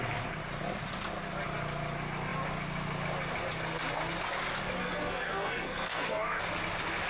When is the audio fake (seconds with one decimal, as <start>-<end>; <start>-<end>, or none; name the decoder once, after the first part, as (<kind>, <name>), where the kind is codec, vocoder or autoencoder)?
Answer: 4.8-6.4 (codec, SNAC)